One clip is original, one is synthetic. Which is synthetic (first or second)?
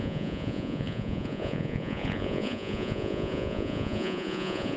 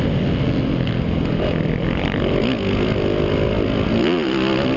first